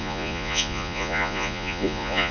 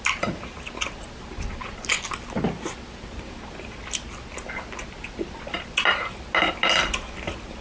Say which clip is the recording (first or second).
second